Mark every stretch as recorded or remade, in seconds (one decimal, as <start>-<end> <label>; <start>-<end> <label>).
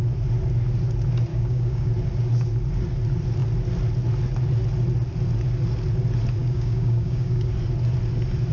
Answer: 0.0-1.3 recorded; 1.3-1.9 remade; 1.9-6.4 recorded; 6.4-7.5 remade; 7.5-8.5 recorded